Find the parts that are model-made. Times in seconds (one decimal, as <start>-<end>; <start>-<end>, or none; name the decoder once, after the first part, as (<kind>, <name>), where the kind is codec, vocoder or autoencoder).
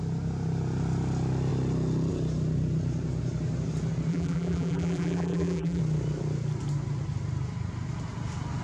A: 4.1-5.8 (vocoder, BigVGAN v2)